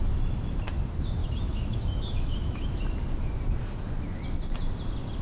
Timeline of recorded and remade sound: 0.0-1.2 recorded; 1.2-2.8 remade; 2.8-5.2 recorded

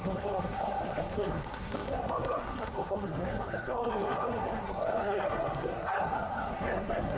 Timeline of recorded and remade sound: 0.0-7.2 remade

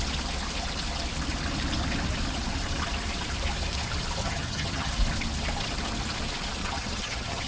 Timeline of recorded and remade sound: 0.0-4.2 recorded; 4.2-4.9 remade; 4.9-6.6 recorded; 6.6-7.5 remade

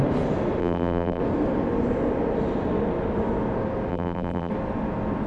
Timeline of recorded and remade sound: 0.0-0.6 recorded; 0.6-1.2 remade; 1.2-3.9 recorded; 3.9-4.5 remade; 4.5-5.3 recorded